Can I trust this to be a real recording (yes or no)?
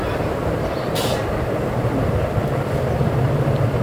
yes